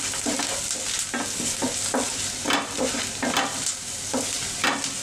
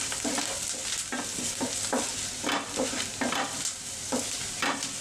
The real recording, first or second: first